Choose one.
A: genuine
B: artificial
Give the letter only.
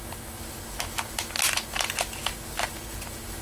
A